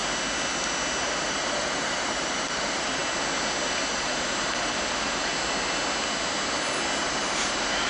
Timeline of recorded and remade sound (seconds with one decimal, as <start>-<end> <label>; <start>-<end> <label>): 0.0-1.0 recorded; 1.0-3.0 remade; 3.0-3.9 recorded; 3.9-5.3 remade; 5.3-7.0 recorded; 7.0-7.9 remade